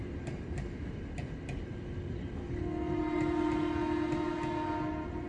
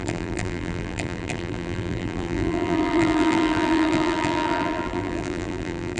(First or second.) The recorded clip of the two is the first